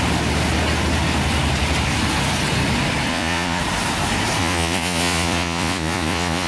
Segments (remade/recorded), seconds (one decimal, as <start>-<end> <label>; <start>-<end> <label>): 0.0-3.1 recorded; 3.1-3.6 remade; 3.6-4.4 recorded; 4.4-6.5 remade